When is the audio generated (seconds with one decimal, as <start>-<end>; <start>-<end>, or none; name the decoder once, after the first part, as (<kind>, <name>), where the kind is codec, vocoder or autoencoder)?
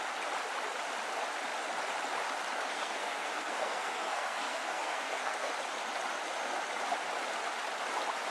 2.7-5.5 (codec, SNAC)